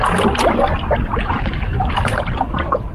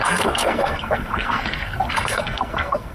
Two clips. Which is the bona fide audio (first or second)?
first